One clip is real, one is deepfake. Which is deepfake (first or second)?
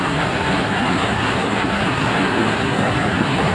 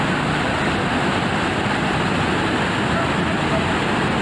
first